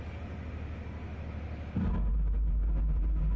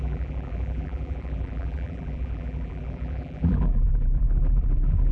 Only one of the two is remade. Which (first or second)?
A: second